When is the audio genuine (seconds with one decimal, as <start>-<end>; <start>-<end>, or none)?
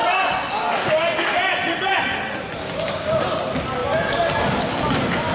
0.0-2.6; 3.2-5.3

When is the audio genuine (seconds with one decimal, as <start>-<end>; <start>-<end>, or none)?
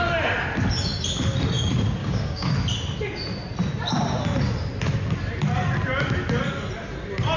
0.0-2.0; 2.5-7.4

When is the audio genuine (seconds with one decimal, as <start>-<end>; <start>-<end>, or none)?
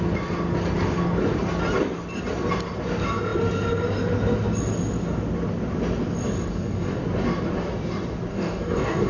0.0-6.5; 7.0-8.3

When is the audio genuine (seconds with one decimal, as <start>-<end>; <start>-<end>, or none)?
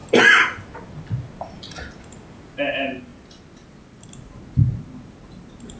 0.0-5.8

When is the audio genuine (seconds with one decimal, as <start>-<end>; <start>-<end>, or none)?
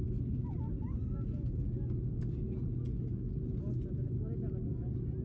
0.0-5.2